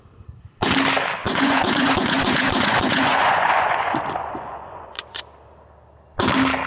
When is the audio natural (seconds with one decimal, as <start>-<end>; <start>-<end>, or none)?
0.0-1.2; 5.2-6.7